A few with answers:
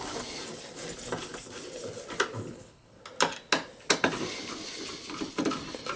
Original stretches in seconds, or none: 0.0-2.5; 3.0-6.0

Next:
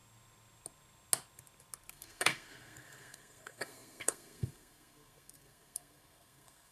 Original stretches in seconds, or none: 0.0-1.9

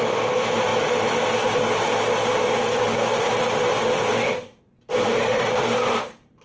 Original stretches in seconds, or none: 0.7-2.6; 3.5-4.1; 4.5-5.2

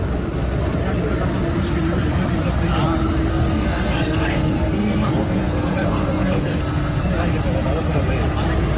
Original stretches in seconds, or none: 0.0-3.3; 7.1-8.8

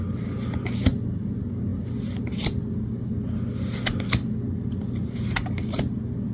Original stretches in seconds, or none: 0.0-6.3